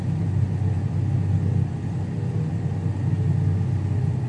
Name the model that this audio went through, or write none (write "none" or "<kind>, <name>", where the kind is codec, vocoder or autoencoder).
none